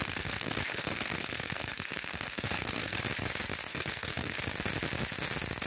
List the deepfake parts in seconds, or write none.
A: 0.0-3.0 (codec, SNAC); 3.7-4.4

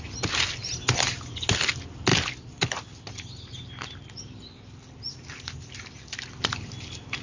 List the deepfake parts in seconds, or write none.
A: none

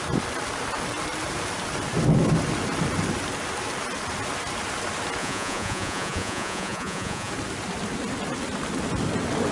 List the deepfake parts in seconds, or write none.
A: 5.2-7.3 (vocoder, Vocos)

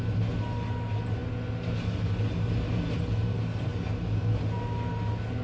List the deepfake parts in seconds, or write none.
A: none

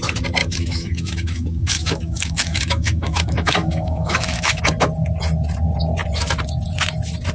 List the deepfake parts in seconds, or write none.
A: 0.4-4.6 (autoencoder, DAC-VAE)

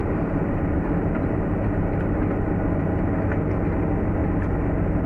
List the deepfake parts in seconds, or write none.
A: 0.0-3.1 (vocoder, BigVGAN v2); 4.2-5.1

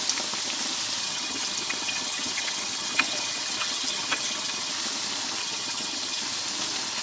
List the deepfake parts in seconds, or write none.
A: 1.0-4.7 (vocoder, HiFi-GAN); 5.4-6.2

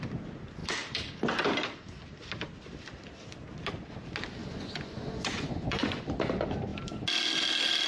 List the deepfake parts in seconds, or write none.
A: 4.4-6.1 (vocoder, Vocos)